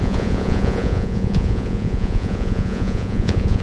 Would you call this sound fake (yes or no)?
yes